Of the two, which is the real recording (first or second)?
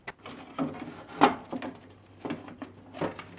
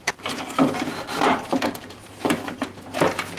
first